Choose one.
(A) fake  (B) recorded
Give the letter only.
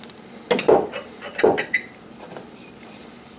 B